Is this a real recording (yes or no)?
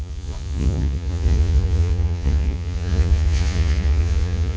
no